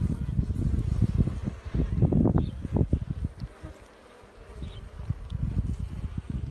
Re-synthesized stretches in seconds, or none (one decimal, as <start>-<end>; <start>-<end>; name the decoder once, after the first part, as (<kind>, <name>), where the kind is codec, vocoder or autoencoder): none